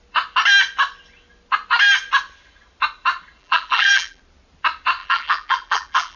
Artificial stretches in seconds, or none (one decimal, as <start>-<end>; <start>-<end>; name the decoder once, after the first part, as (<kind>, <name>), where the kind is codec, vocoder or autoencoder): 3.4-4.2 (vocoder, BigVGAN v2); 5.0-6.2